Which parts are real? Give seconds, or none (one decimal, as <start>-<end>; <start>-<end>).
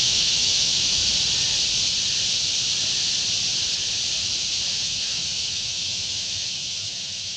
1.0-4.7